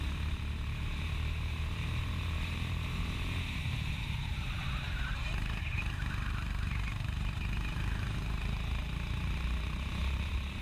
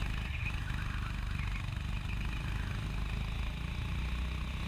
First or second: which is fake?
first